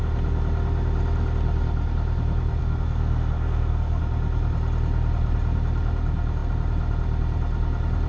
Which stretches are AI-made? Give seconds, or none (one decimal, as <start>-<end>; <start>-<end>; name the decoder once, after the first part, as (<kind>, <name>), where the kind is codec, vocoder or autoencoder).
2.6-4.0 (codec, SNAC)